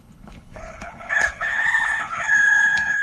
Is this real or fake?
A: fake